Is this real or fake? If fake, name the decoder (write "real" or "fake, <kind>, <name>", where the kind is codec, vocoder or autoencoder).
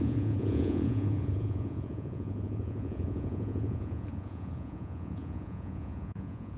fake, vocoder, Vocos